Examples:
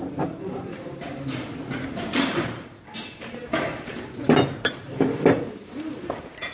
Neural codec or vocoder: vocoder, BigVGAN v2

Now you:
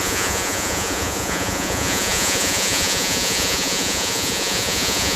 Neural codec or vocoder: vocoder, Vocos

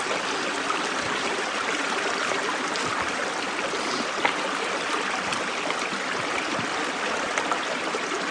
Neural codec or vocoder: none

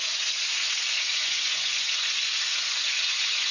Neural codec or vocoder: vocoder, Vocos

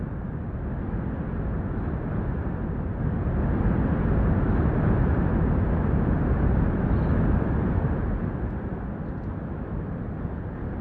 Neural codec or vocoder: none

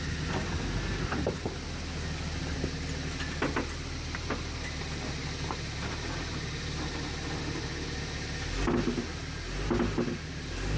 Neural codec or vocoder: none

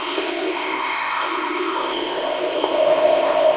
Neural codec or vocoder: codec, ZipCodec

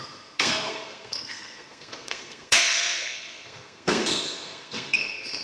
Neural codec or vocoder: codec, SNAC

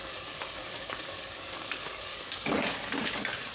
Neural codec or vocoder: codec, DAC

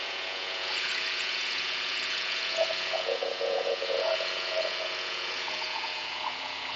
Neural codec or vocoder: vocoder, Vocos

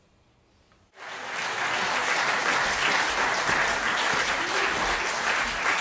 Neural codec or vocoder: none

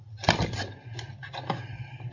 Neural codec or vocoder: none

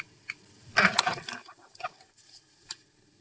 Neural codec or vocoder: none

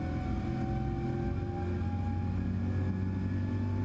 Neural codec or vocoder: none